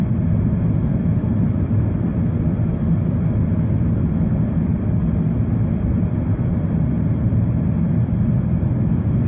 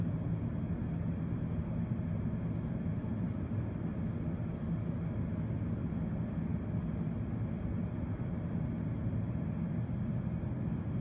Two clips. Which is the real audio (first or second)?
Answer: second